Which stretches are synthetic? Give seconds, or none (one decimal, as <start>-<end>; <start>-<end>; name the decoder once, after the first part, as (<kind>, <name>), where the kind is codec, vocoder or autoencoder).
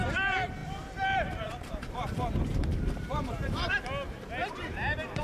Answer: 0.6-3.7 (vocoder, BigVGAN v2)